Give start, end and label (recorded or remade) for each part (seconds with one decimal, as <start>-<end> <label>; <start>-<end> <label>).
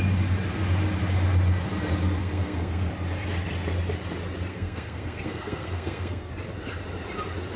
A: 0.0-2.2 recorded; 2.2-2.9 remade; 2.9-4.5 recorded; 4.5-6.3 remade; 6.3-7.6 recorded